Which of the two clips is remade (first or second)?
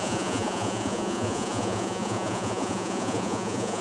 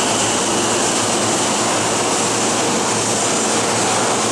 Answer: first